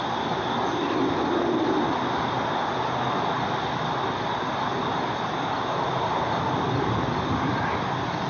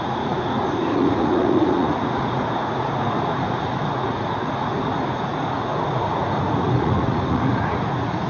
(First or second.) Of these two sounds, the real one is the first